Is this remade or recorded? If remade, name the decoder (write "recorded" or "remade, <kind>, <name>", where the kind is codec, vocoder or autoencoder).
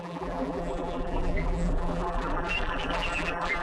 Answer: remade, vocoder, BigVGAN v2